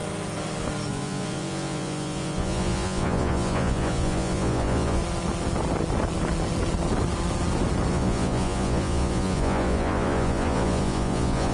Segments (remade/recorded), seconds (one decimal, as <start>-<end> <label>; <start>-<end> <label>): 0.0-0.9 recorded; 0.9-5.0 remade; 5.0-7.9 recorded; 7.9-11.5 remade